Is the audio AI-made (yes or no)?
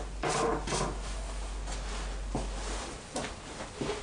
no